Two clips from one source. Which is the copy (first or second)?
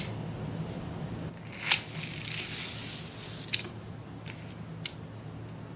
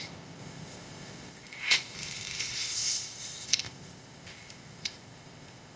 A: second